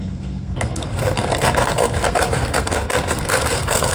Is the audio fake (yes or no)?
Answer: yes